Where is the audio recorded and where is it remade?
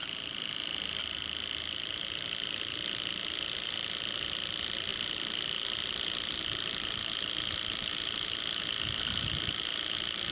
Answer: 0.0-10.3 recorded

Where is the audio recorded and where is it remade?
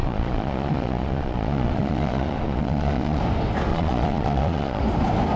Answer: 0.0-3.2 remade; 3.2-3.7 recorded; 3.7-4.8 remade; 4.8-5.4 recorded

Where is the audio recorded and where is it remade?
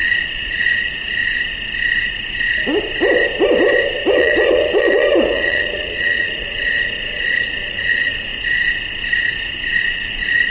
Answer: 0.0-1.2 remade; 1.2-4.1 recorded; 4.1-8.3 remade; 8.3-9.8 recorded; 9.8-10.5 remade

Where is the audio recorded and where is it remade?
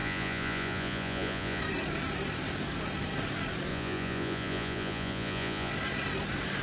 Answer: 0.0-1.6 remade; 1.6-3.7 recorded; 3.7-5.7 remade; 5.7-6.6 recorded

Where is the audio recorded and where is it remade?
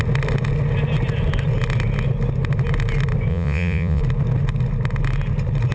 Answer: 0.0-3.3 recorded; 3.3-4.0 remade; 4.0-5.7 recorded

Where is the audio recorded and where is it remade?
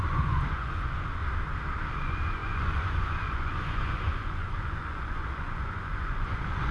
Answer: 0.0-1.2 remade; 1.2-1.9 recorded; 1.9-6.7 remade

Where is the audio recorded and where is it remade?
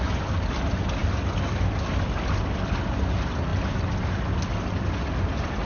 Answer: 0.0-5.7 recorded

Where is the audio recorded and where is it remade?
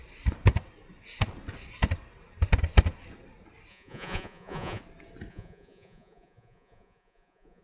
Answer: 0.0-3.7 recorded; 3.7-4.8 remade; 4.8-5.3 recorded; 5.3-7.6 remade